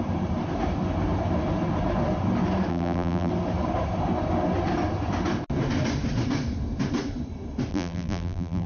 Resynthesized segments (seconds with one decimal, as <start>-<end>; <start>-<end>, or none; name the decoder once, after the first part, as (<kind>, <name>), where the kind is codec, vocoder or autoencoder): 2.7-3.3 (vocoder, BigVGAN v2); 7.7-8.7